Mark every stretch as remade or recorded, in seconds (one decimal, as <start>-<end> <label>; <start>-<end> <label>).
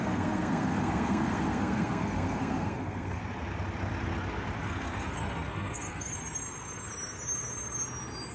0.0-3.2 remade; 3.2-4.6 recorded; 4.6-6.1 remade; 6.1-8.3 recorded